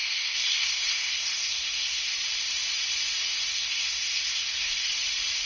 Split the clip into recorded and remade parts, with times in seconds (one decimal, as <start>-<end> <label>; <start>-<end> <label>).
0.0-2.1 remade; 2.1-3.5 recorded; 3.5-4.9 remade; 4.9-5.5 recorded